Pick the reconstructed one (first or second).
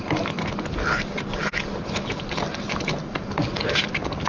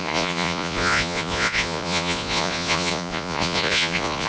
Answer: second